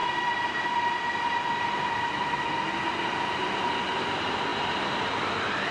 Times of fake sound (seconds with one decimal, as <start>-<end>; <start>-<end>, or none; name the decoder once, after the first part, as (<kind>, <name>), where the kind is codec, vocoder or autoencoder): none